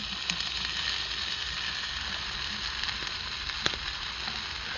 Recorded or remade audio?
recorded